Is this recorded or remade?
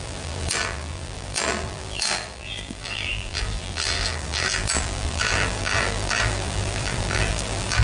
remade